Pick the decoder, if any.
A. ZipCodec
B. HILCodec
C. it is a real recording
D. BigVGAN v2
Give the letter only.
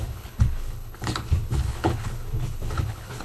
B